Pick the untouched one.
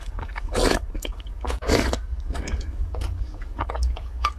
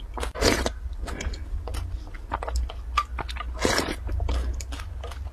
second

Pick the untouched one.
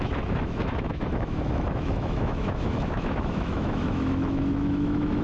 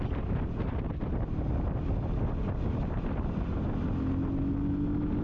second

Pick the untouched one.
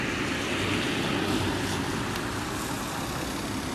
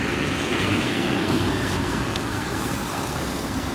first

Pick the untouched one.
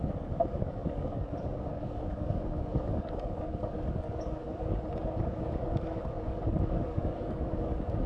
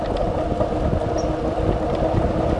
second